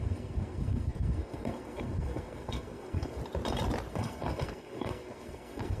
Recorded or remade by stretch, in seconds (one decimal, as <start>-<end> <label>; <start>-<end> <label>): 0.0-3.2 remade; 3.2-3.9 recorded; 3.9-5.8 remade